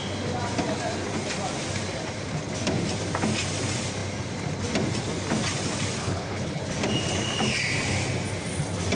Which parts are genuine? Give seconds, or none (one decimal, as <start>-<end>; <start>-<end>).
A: 0.0-6.0; 6.6-8.9